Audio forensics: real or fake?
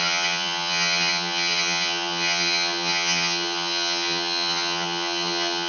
fake